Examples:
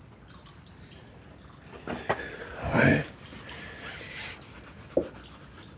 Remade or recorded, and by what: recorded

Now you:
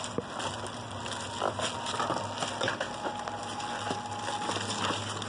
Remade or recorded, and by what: recorded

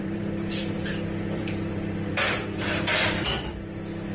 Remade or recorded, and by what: remade, vocoder, BigVGAN v2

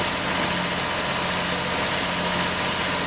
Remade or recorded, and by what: recorded